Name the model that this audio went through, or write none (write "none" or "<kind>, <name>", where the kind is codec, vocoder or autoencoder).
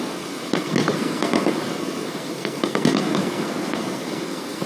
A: codec, SNAC